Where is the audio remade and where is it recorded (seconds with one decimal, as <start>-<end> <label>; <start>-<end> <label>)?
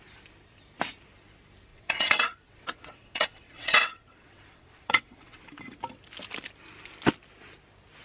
0.0-1.7 recorded; 1.7-5.4 remade; 5.4-8.0 recorded